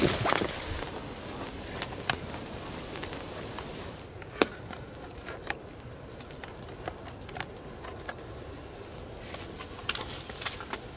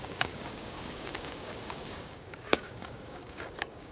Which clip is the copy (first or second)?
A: second